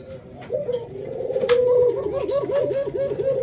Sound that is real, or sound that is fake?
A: real